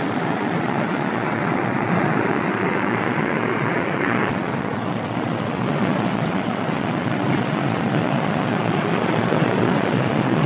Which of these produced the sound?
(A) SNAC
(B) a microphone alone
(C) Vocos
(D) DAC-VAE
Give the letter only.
C